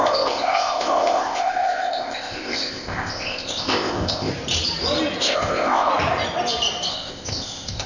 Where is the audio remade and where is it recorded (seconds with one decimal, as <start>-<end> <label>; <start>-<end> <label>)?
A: 0.0-4.3 remade; 4.3-5.2 recorded; 5.2-5.9 remade; 5.9-6.9 recorded; 6.9-7.9 remade